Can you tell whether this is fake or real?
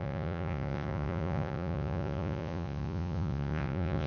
fake